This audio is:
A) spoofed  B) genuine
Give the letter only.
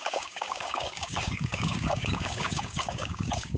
A